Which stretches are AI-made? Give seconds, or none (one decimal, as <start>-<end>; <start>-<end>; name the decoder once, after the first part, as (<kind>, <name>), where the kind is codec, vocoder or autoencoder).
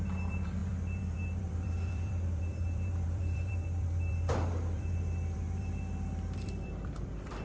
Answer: 0.0-7.4 (vocoder, BigVGAN v2)